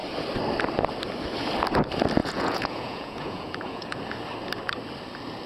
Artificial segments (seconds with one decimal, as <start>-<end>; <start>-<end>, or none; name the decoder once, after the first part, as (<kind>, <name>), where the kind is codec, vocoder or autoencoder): 2.2-4.0 (vocoder, Vocos)